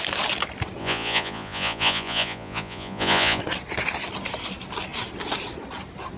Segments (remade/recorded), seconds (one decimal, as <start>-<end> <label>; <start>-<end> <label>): 0.0-0.8 recorded; 0.8-3.4 remade; 3.4-6.2 recorded